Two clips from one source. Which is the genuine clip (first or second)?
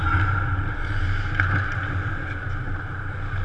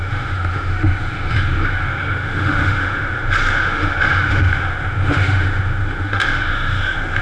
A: first